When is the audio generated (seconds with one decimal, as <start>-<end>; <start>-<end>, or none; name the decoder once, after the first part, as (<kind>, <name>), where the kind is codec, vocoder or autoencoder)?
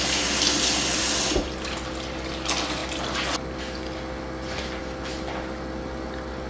none